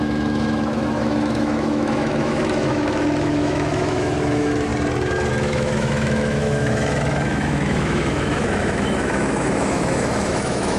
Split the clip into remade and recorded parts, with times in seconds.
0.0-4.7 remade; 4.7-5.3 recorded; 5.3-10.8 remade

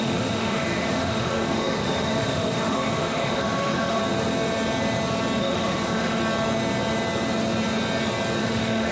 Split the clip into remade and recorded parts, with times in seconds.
0.0-4.0 remade; 4.0-5.4 recorded; 5.4-6.2 remade; 6.2-8.4 recorded; 8.4-8.9 remade

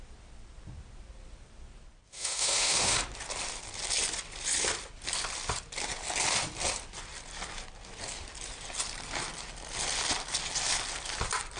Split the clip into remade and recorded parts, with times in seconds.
0.0-2.1 recorded; 2.1-3.0 remade; 3.0-11.6 recorded

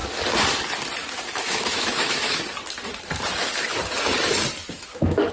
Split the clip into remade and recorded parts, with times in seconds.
0.0-1.0 recorded; 1.0-2.4 remade; 2.4-4.6 recorded; 4.6-5.3 remade

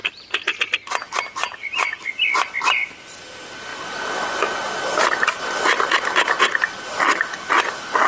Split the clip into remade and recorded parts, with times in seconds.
0.0-8.1 recorded

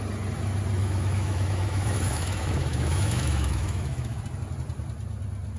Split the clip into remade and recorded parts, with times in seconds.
0.0-0.8 recorded; 0.8-4.2 remade; 4.2-5.6 recorded